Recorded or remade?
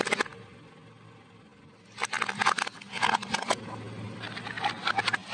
recorded